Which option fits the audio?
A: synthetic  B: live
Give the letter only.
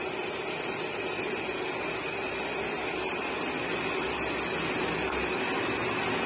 A